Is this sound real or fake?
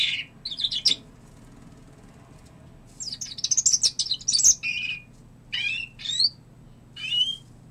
real